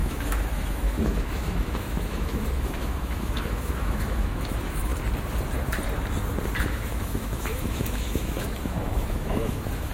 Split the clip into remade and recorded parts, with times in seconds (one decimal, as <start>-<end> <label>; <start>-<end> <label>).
0.0-4.9 remade; 4.9-6.6 recorded; 6.6-9.9 remade